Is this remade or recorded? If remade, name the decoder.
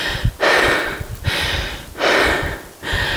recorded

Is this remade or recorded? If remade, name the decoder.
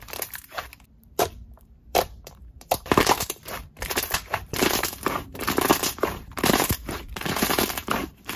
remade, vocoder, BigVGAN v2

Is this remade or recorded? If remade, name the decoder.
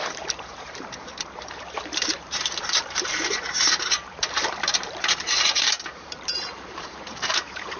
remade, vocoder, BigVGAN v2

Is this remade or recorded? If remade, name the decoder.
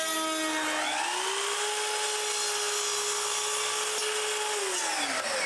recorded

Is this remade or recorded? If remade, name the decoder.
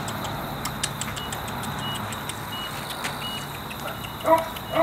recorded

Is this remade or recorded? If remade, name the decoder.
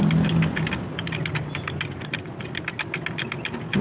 recorded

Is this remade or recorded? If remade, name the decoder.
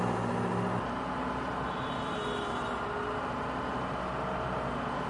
recorded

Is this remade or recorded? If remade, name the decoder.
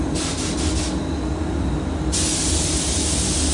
recorded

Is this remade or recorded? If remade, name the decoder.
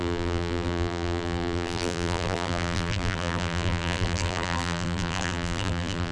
remade, vocoder, BigVGAN v2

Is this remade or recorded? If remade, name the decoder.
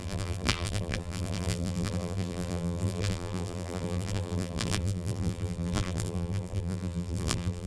remade, vocoder, BigVGAN v2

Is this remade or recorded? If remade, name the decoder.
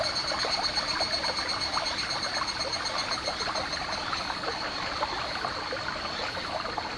recorded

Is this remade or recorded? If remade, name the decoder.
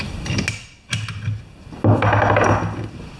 recorded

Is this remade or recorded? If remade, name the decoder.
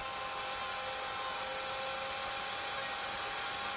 recorded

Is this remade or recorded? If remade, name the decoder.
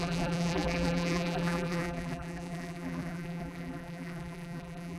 remade, vocoder, BigVGAN v2